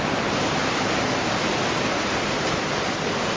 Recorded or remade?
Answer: recorded